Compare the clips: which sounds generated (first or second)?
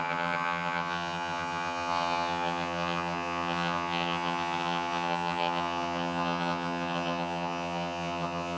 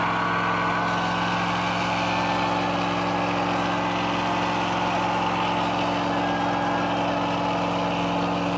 first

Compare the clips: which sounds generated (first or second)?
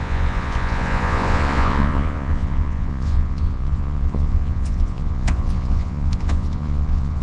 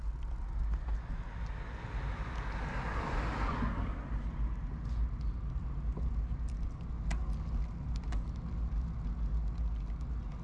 first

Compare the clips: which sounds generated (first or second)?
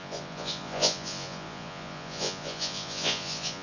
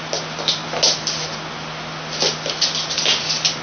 first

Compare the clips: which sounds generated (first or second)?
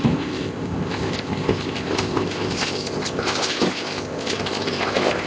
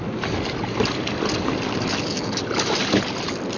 first